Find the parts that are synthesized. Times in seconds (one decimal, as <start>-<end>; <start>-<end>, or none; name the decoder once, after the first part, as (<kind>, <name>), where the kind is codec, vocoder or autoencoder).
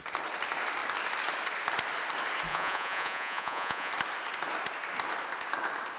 2.5-3.9 (vocoder, Vocos)